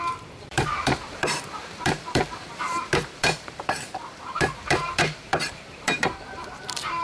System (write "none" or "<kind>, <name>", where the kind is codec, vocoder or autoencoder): vocoder, BigVGAN v2